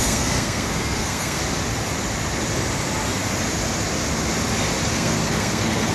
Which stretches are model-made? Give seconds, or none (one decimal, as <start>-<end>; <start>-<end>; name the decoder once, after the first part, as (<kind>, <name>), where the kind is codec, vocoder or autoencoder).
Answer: 0.0-1.4 (codec, SNAC); 4.9-5.9